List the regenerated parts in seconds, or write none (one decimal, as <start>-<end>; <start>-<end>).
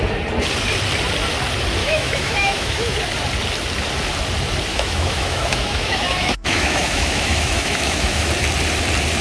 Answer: 1.8-3.0; 4.7-8.3